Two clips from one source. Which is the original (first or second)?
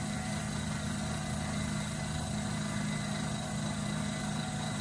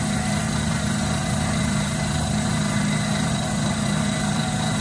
first